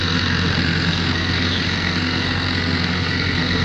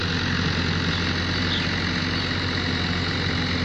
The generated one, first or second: first